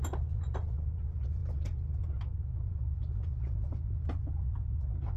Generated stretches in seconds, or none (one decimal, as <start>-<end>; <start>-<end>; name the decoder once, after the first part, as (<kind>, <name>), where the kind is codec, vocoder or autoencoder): none